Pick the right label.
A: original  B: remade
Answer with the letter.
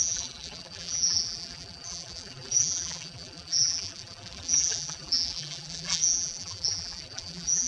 B